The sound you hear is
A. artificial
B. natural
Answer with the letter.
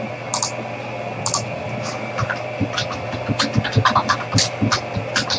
B